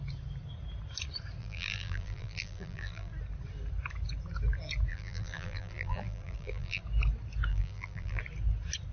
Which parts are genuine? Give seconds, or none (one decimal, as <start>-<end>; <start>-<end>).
0.0-1.4; 3.1-4.9; 6.8-7.5; 8.2-8.9